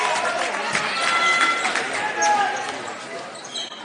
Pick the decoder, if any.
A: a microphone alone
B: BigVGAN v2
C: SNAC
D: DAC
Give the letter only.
A